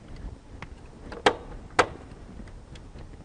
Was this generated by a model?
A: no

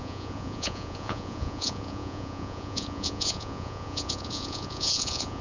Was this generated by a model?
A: yes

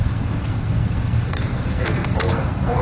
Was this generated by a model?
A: yes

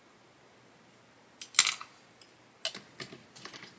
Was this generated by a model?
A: no